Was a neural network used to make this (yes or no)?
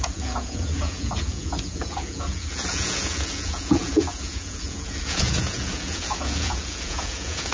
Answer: yes